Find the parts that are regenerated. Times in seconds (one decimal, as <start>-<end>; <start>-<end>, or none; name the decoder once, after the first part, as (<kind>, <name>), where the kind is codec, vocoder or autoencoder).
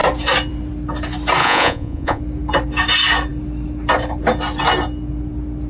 1.4-2.2 (vocoder, Vocos)